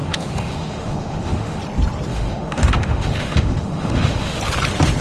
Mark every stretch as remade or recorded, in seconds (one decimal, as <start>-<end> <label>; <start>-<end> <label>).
0.0-1.6 remade; 1.6-2.1 recorded; 2.1-4.4 remade; 4.4-5.0 recorded